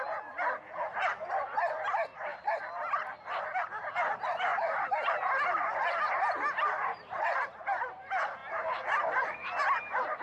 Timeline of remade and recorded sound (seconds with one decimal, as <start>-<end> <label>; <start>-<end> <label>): 0.0-8.4 remade; 8.4-9.0 recorded; 9.0-10.2 remade